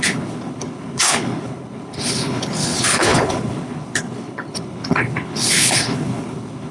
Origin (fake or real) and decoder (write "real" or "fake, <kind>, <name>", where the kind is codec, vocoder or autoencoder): fake, codec, HILCodec